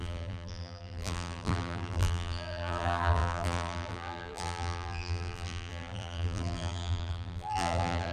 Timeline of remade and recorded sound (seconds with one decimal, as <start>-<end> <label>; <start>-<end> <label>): 0.0-8.1 remade